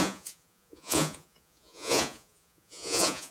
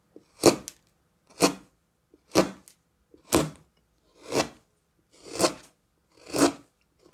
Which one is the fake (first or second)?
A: first